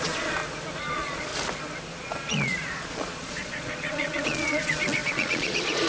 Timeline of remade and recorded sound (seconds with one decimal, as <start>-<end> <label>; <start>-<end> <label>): 0.0-0.4 remade; 0.4-0.9 recorded; 0.9-1.3 remade; 1.3-1.9 recorded; 1.9-5.9 remade